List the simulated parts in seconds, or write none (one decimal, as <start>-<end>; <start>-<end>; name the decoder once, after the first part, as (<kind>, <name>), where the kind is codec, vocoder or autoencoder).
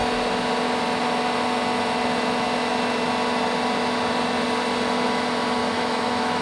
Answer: 5.6-6.4 (autoencoder, DAC-VAE)